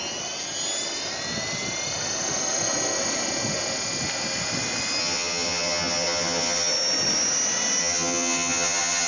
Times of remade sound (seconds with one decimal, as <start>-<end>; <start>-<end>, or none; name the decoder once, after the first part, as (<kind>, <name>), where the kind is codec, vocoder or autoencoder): 5.0-6.7 (vocoder, HiFi-GAN); 7.8-9.1